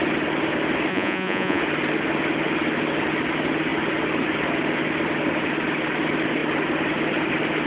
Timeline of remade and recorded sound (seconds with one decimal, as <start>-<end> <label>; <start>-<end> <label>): 0.0-0.9 recorded; 0.9-1.6 remade; 1.6-7.7 recorded